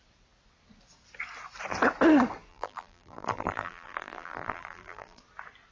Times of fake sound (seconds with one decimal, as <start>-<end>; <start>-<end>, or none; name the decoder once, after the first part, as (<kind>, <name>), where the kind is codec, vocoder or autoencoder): 2.5-5.2 (vocoder, BigVGAN v2)